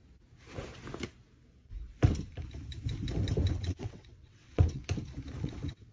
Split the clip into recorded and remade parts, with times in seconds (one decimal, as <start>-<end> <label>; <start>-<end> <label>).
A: 0.0-3.5 recorded; 3.5-4.8 remade; 4.8-5.4 recorded; 5.4-5.9 remade